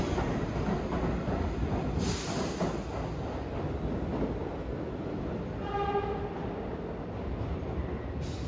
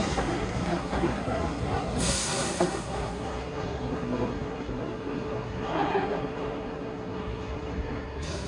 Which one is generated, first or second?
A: second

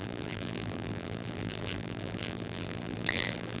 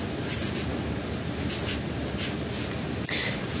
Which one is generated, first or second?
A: first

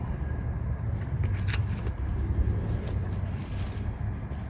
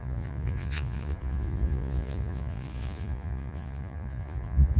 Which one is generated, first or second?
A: second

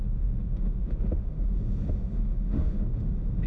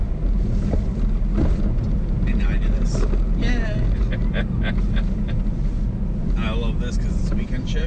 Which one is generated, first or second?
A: first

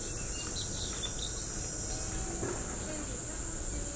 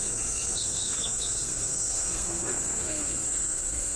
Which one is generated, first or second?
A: second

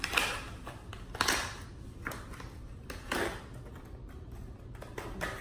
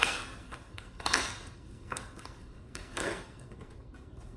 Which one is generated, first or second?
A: second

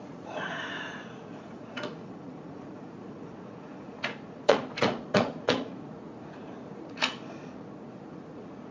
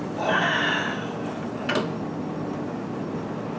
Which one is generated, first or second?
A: first